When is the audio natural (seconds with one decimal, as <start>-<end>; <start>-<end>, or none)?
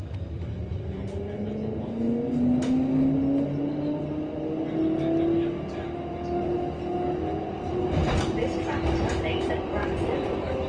0.0-10.7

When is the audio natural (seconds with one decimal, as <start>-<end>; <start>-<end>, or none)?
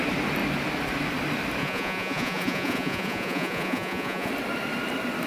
0.0-1.6; 4.3-5.3